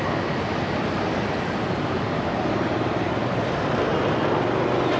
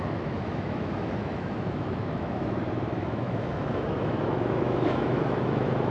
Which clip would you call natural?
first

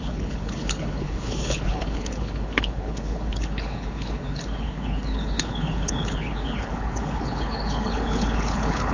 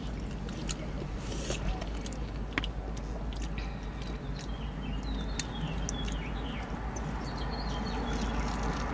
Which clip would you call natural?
second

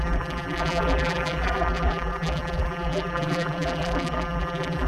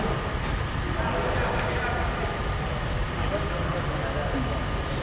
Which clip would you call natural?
second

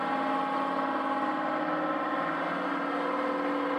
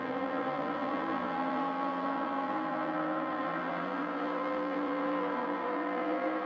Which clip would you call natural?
first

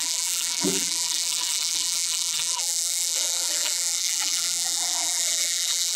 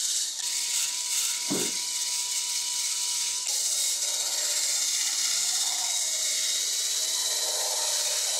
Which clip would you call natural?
second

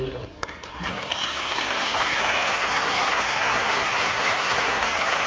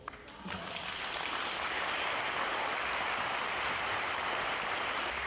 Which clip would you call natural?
second